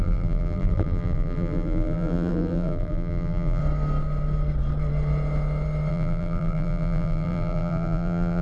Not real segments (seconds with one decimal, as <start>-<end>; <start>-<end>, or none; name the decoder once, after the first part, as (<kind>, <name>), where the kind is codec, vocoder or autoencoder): 0.0-3.6 (vocoder, BigVGAN v2); 5.9-8.4

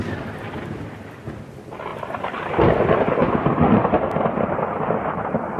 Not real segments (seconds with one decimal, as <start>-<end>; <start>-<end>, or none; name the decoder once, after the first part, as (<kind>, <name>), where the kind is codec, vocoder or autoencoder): none

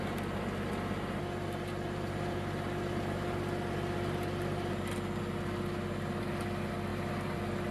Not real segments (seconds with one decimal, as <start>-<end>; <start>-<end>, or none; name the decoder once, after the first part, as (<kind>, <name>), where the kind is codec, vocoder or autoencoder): 6.9-7.7 (vocoder, BigVGAN v2)

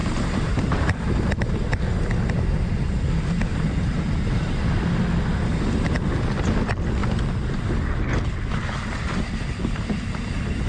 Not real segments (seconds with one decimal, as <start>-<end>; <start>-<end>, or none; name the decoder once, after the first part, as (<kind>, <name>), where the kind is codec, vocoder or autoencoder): 0.0-1.8 (vocoder, BigVGAN v2); 3.5-4.6

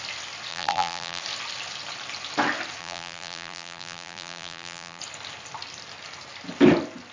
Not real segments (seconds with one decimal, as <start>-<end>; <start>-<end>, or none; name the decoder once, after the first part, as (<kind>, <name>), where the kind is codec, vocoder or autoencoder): 0.5-1.2 (vocoder, BigVGAN v2); 2.8-5.0

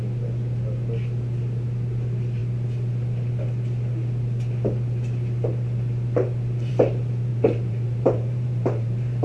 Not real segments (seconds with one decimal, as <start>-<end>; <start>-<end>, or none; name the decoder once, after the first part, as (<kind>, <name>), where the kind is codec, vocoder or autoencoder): 7.3-9.2 (vocoder, BigVGAN v2)

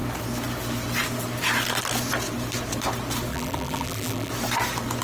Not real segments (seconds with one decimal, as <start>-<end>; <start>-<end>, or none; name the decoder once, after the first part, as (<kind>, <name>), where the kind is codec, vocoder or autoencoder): 3.3-4.3 (vocoder, BigVGAN v2)